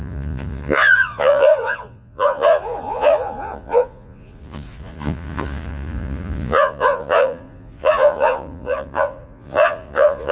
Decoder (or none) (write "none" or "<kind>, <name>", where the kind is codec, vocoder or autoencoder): vocoder, Vocos